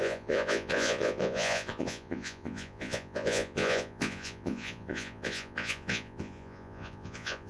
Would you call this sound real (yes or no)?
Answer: no